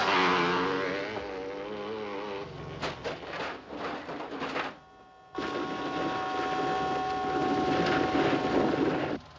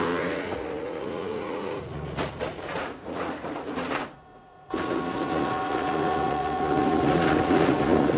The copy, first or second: second